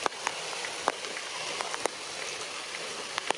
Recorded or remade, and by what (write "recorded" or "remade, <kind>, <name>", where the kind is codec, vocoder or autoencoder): recorded